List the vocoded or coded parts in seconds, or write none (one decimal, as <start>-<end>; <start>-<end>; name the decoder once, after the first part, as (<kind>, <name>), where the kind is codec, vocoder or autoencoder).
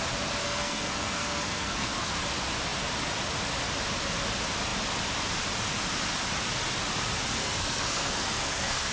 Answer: 0.4-2.1 (codec, SNAC); 7.4-8.9